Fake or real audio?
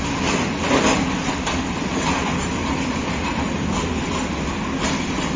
real